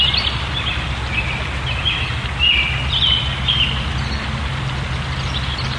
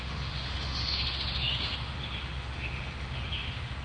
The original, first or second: first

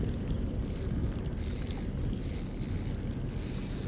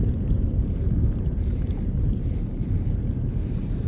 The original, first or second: first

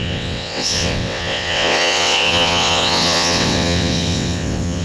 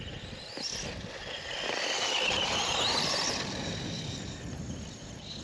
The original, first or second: second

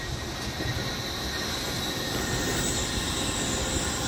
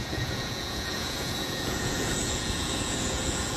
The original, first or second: first